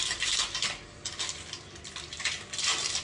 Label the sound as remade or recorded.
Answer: recorded